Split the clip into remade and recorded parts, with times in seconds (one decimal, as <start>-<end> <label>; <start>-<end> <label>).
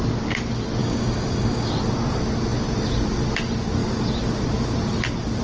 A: 0.0-0.8 recorded; 0.8-1.7 remade; 1.7-5.4 recorded